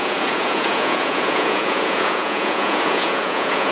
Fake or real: fake